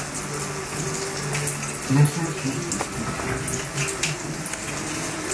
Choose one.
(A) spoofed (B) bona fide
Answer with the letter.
B